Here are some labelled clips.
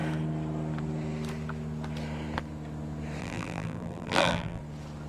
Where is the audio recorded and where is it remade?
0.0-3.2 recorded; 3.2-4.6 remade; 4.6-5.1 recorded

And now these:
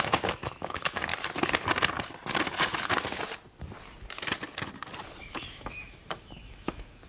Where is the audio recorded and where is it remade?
0.0-1.1 remade; 1.1-5.2 recorded; 5.2-7.1 remade